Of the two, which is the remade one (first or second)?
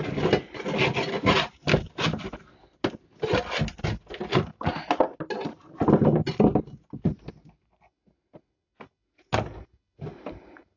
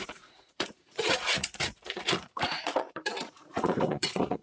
second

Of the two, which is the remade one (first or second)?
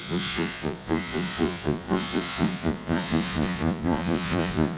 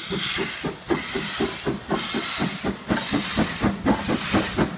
first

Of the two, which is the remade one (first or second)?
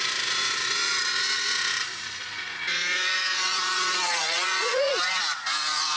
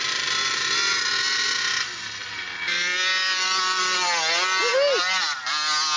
first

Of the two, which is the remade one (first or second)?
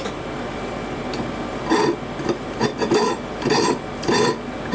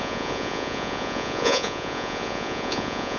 second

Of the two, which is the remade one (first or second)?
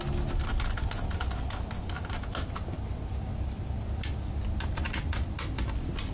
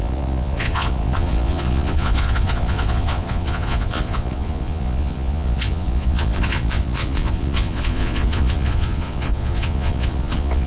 second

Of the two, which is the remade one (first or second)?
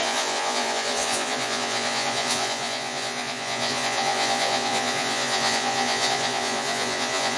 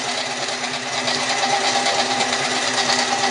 first